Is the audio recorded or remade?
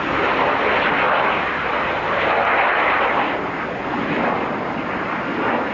recorded